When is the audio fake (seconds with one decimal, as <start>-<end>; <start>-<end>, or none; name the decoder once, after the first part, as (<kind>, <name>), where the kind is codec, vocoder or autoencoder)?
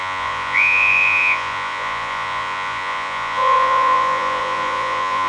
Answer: 0.0-5.3 (vocoder, Vocos)